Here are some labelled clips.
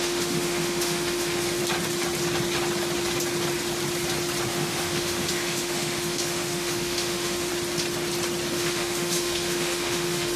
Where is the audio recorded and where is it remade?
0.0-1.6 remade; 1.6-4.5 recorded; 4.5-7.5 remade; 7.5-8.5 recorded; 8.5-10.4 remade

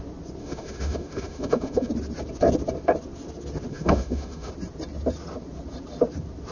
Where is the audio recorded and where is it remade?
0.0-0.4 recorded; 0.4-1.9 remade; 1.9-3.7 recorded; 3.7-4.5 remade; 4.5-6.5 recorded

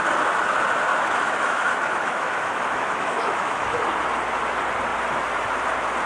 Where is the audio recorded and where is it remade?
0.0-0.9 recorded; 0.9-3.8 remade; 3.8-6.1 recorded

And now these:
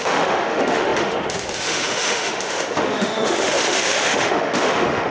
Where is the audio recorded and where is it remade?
0.0-5.1 remade